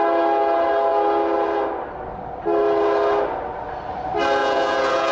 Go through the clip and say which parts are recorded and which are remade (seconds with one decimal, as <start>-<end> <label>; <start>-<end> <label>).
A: 0.0-4.4 recorded; 4.4-5.1 remade